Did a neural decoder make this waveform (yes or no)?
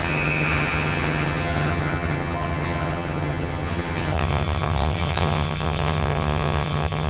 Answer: yes